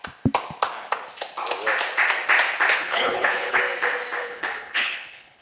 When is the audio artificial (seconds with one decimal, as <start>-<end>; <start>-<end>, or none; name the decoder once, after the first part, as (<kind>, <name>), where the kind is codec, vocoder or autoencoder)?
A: 2.8-3.6 (codec, HILCodec); 4.2-5.4